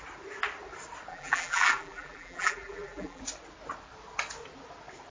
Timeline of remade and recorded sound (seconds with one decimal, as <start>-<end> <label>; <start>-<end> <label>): 0.0-1.1 recorded; 1.1-3.2 remade; 3.2-5.1 recorded